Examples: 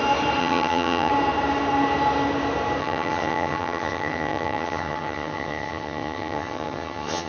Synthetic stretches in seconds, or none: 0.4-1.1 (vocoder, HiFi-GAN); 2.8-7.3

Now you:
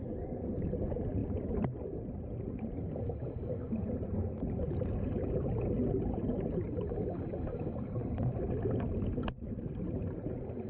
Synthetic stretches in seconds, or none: none